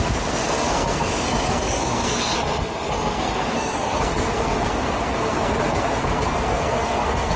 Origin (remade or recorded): remade